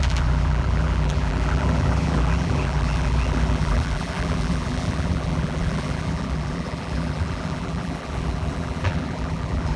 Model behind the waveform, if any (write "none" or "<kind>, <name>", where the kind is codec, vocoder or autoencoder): vocoder, BigVGAN v2